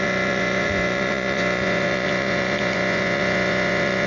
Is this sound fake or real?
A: fake